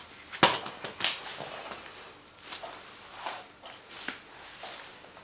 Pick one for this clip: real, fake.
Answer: real